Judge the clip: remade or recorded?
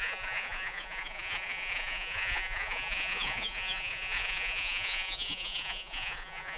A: remade